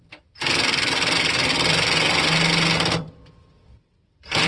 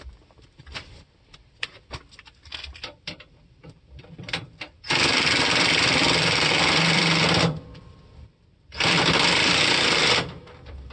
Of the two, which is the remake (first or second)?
second